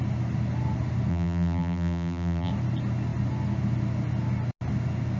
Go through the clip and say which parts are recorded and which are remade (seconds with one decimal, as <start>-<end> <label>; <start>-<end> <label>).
0.0-1.1 recorded; 1.1-2.5 remade; 2.5-5.2 recorded